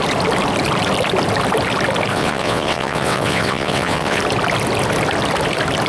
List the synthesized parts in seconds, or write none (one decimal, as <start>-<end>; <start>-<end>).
2.1-4.2